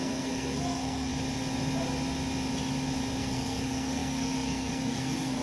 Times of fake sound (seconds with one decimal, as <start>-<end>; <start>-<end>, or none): 0.0-1.1; 3.2-5.4